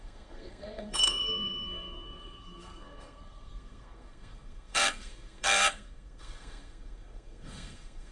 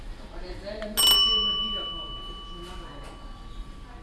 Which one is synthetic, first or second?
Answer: first